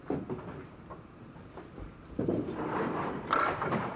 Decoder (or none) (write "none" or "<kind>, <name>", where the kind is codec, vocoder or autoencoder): none